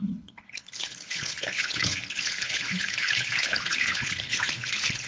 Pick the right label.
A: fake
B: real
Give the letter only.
A